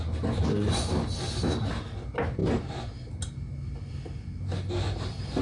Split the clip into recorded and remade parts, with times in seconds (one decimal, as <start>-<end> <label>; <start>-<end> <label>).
0.0-5.4 recorded